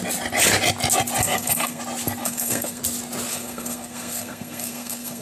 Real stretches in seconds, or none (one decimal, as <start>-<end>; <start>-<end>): 0.0-1.2; 1.8-2.2; 2.8-3.3